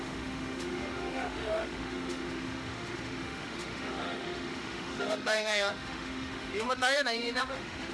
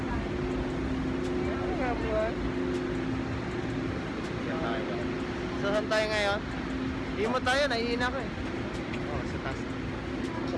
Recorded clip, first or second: second